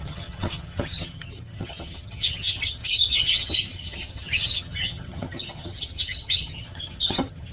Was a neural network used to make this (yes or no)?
yes